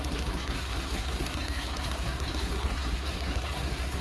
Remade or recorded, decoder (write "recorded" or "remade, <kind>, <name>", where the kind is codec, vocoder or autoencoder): remade, codec, SNAC